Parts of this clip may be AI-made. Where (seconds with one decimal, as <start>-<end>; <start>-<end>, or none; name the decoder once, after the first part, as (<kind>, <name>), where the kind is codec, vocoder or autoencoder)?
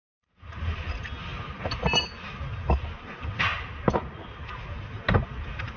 none